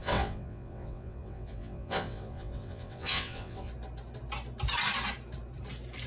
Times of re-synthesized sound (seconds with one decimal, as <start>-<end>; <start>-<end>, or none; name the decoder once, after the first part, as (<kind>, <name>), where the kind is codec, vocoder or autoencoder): 0.0-3.7 (vocoder, WaveNeXt)